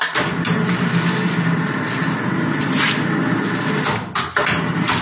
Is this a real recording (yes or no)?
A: yes